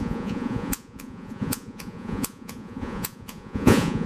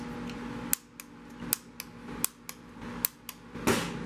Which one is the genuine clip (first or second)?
second